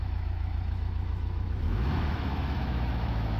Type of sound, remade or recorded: remade